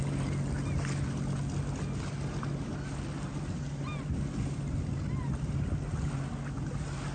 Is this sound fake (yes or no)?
no